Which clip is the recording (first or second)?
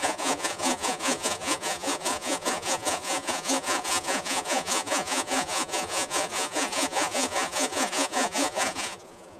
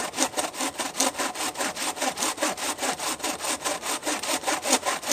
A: second